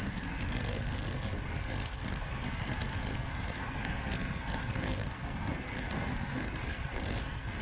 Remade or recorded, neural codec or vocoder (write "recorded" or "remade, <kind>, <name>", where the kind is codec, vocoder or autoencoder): remade, codec, SNAC